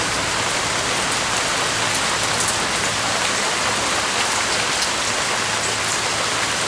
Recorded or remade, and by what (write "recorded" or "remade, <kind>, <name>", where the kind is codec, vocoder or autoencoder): recorded